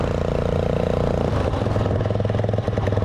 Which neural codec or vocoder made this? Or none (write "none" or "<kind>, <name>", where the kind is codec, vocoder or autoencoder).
none